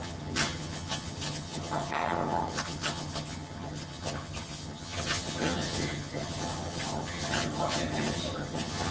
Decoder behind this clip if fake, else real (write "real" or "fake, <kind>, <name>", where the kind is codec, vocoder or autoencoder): fake, vocoder, HiFi-GAN